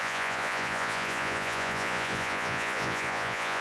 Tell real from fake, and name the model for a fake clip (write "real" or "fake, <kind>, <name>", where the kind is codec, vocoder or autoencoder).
fake, vocoder, Vocos